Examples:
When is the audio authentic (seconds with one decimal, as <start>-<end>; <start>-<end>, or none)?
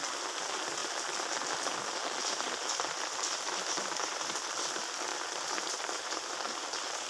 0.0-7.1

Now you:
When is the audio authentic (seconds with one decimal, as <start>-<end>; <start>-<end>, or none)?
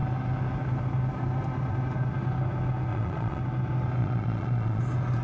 0.0-2.9; 3.4-4.0; 4.8-5.2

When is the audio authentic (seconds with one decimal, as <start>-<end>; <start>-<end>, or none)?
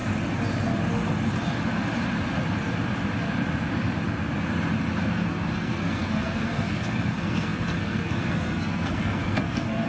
0.0-5.0